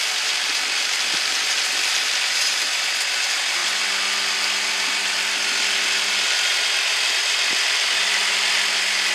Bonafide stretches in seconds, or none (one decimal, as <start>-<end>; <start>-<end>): 0.0-9.1